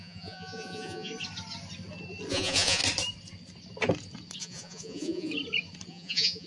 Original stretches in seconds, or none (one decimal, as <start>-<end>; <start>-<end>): 1.1-2.3; 2.8-4.4; 5.3-5.9